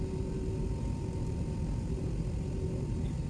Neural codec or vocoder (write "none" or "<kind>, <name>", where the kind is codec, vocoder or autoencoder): none